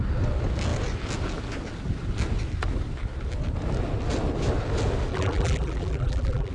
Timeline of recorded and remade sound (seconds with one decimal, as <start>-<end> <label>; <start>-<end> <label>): 0.0-5.1 recorded; 5.1-6.5 remade

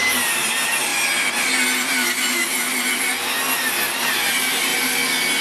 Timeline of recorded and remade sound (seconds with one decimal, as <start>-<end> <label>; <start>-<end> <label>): 0.0-0.9 remade; 0.9-4.1 recorded; 4.1-4.7 remade; 4.7-5.4 recorded

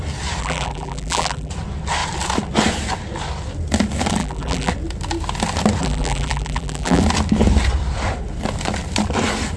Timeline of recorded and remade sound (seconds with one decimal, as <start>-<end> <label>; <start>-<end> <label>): 0.0-0.4 recorded; 0.4-1.5 remade; 1.5-4.2 recorded; 4.2-4.7 remade; 4.7-5.8 recorded; 5.8-7.0 remade; 7.0-9.6 recorded

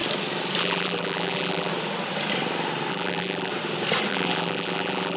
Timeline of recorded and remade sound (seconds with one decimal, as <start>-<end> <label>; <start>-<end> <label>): 0.0-0.6 recorded; 0.6-1.7 remade; 1.7-2.9 recorded; 2.9-3.5 remade; 3.5-4.1 recorded; 4.1-5.2 remade

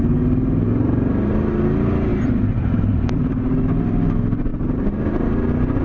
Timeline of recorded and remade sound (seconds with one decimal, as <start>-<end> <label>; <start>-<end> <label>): 0.0-2.1 recorded; 2.1-3.6 remade; 3.6-4.5 recorded; 4.5-5.8 remade

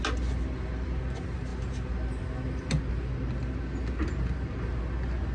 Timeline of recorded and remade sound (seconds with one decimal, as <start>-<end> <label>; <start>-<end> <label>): 0.0-5.3 recorded

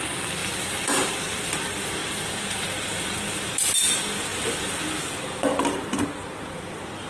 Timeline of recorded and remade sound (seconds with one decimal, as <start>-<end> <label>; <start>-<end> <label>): 0.0-0.4 recorded; 0.4-1.1 remade; 1.1-2.0 recorded; 2.0-2.6 remade; 2.6-7.1 recorded